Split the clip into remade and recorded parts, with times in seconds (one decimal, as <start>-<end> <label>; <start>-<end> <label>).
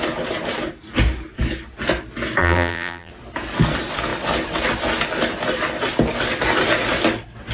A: 0.0-2.4 recorded; 2.4-3.1 remade; 3.1-7.5 recorded